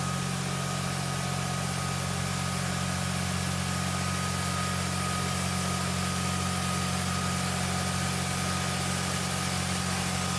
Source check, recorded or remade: recorded